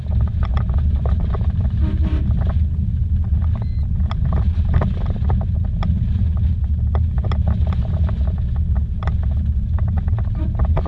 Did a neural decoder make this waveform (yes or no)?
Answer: no